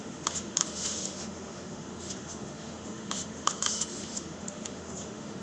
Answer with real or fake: fake